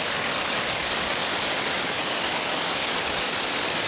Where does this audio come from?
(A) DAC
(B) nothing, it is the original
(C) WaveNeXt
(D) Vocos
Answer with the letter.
A